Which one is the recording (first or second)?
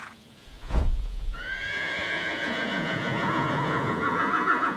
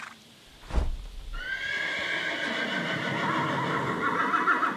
second